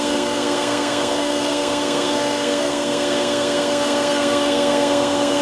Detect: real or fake fake